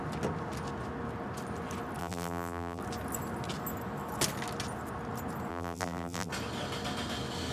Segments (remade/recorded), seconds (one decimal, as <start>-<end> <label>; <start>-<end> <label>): 0.0-2.0 recorded; 2.0-2.8 remade; 2.8-5.5 recorded; 5.5-6.3 remade; 6.3-7.5 recorded